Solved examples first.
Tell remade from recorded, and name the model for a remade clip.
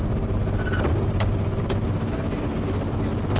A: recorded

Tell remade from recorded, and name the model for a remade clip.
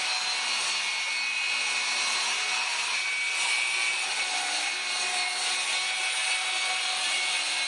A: recorded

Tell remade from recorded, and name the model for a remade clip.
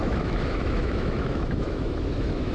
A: remade, autoencoder, DAC-VAE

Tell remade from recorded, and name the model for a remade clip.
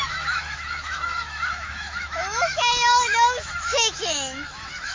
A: remade, autoencoder, DAC-VAE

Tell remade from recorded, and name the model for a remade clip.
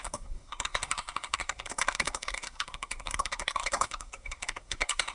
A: remade, codec, SNAC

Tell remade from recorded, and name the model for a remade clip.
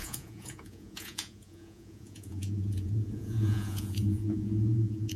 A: remade, vocoder, Vocos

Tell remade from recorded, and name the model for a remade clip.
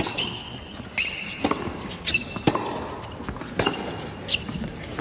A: recorded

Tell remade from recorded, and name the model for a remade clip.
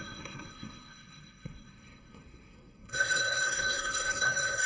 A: remade, codec, SNAC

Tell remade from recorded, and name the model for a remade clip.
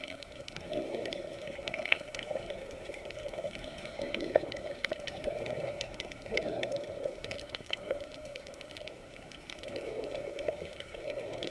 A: remade, codec, SNAC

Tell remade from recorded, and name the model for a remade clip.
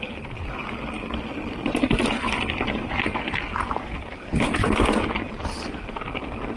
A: recorded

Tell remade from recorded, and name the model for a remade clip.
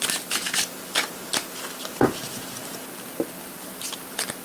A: recorded